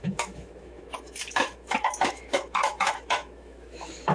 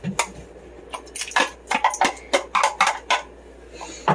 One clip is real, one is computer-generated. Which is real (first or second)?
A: second